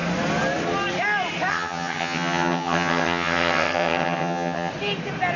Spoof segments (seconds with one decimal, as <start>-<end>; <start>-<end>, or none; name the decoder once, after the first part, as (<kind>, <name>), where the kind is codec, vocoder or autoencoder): 1.5-4.7 (vocoder, HiFi-GAN)